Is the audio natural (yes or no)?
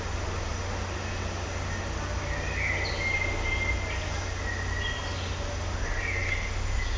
yes